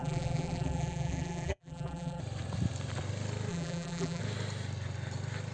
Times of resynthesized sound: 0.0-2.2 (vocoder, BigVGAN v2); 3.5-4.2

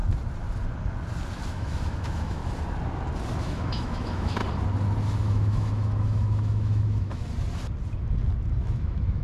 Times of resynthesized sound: 1.5-2.4 (autoencoder, DAC-VAE); 3.4-4.4; 5.3-7.2; 8.6-9.2

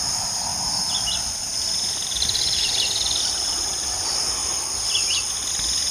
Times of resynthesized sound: none

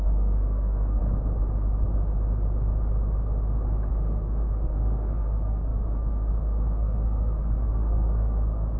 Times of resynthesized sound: 0.0-1.0 (codec, SNAC); 3.9-8.8

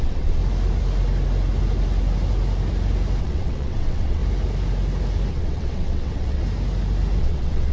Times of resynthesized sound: 0.0-0.4 (vocoder, WaveNeXt); 3.2-4.2; 5.3-6.4; 7.2-7.7

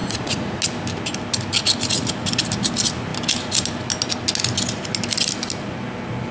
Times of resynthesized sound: 0.0-0.6 (vocoder, Vocos)